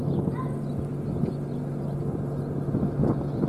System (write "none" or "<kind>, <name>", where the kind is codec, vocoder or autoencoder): none